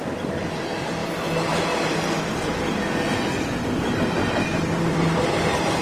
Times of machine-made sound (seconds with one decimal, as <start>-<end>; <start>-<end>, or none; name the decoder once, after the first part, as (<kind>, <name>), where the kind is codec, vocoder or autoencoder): none